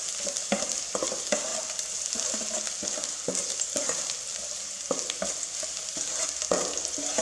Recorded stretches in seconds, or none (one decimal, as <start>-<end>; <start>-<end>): 0.0-7.2